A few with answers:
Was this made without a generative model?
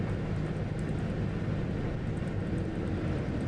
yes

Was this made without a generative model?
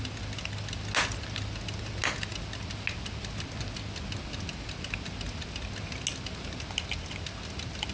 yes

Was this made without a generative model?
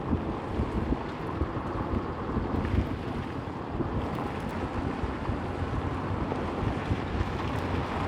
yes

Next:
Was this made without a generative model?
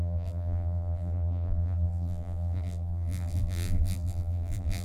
no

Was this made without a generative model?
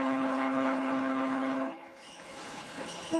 no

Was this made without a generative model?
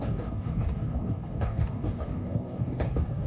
no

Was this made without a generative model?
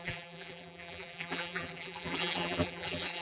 no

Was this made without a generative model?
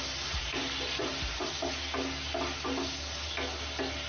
yes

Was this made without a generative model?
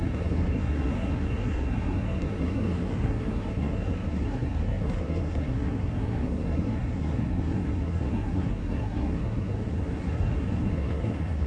no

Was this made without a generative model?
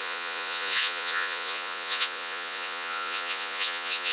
no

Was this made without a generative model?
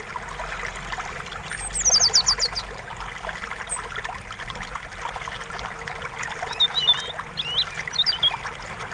yes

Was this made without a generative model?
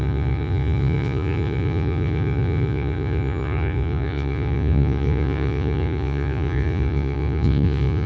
no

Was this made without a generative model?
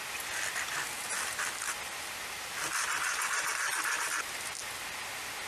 yes